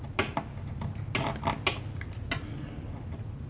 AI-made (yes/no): no